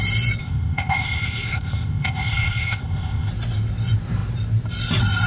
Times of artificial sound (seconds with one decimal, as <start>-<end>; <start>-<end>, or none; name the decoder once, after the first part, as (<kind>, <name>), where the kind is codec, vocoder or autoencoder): 0.4-3.3 (codec, ZipCodec)